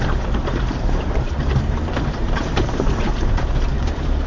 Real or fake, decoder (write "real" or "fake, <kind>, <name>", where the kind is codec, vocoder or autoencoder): fake, vocoder, BigVGAN v2